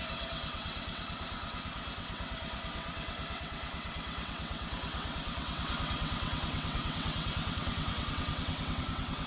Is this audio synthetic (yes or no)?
yes